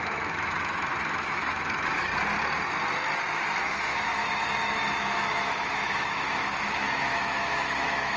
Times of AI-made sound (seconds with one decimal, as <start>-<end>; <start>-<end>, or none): 0.0-2.1; 3.6-8.2